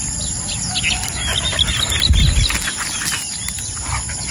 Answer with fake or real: real